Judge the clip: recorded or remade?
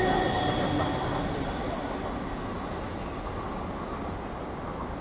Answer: recorded